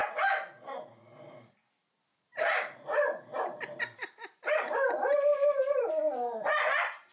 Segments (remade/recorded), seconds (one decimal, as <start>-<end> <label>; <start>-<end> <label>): 0.0-2.1 recorded; 2.1-5.9 remade; 5.9-7.1 recorded